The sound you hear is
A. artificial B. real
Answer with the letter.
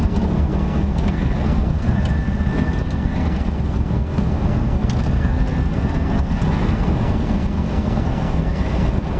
A